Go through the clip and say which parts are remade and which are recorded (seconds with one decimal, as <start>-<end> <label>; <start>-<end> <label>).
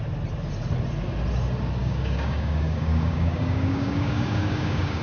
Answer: 0.0-1.8 recorded; 1.8-5.0 remade